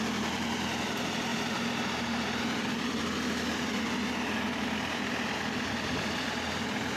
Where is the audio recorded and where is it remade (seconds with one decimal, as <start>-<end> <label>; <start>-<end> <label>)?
0.0-7.0 recorded